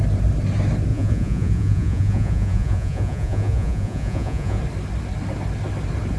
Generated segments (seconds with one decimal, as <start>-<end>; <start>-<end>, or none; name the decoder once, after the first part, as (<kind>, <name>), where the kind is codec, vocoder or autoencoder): 0.9-4.6 (vocoder, Vocos)